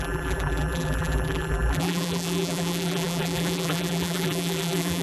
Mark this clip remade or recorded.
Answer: remade